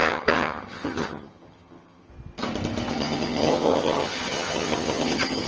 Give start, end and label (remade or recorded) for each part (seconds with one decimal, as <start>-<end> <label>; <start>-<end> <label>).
0.0-2.1 remade; 2.1-2.9 recorded; 2.9-5.5 remade